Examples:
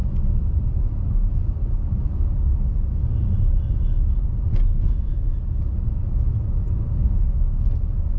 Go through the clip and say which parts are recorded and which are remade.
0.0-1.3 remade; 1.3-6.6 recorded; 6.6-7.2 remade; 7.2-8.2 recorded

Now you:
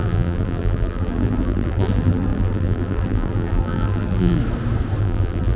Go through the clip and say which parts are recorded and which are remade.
0.0-4.4 remade; 4.4-5.0 recorded; 5.0-5.6 remade

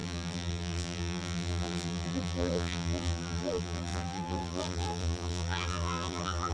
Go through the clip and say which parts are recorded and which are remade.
0.0-6.5 remade

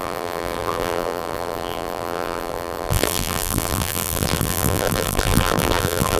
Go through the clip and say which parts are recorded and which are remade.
0.0-6.2 remade

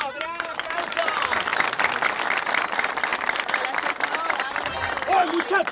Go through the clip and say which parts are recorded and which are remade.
0.0-1.5 remade; 1.5-2.0 recorded; 2.0-5.7 remade